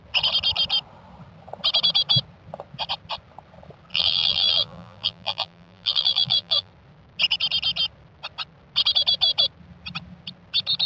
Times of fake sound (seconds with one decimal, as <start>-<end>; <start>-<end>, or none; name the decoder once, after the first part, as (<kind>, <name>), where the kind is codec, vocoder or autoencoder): 3.9-6.7 (vocoder, BigVGAN v2)